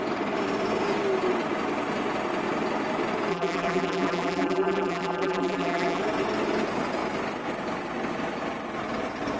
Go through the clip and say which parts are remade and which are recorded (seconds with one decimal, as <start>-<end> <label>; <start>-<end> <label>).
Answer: 0.0-3.3 recorded; 3.3-6.0 remade; 6.0-9.4 recorded